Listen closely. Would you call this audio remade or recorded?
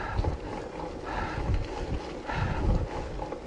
recorded